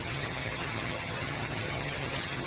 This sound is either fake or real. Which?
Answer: fake